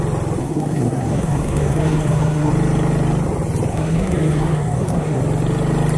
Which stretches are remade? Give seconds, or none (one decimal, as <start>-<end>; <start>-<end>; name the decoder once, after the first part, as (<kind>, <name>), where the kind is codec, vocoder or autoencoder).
0.4-2.5 (codec, SNAC); 3.7-5.2

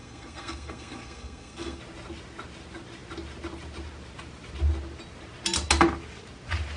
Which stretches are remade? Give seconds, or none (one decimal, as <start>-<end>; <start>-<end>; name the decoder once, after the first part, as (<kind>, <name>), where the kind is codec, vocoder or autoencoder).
0.0-1.8 (codec, SNAC)

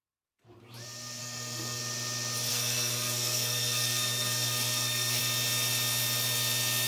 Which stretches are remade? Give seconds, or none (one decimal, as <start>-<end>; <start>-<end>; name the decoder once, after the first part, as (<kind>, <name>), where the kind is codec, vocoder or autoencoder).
1.2-1.8 (codec, SNAC); 2.5-5.2

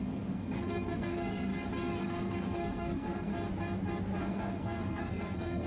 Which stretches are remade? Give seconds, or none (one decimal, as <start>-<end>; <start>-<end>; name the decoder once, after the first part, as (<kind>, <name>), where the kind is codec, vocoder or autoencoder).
0.0-1.5 (codec, SNAC); 2.0-3.3; 4.2-5.7

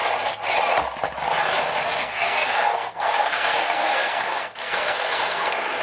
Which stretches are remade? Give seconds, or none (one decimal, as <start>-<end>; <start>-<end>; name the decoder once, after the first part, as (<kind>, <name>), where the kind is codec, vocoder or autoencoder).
2.0-5.8 (codec, SNAC)